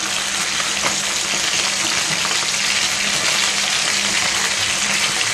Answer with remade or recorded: recorded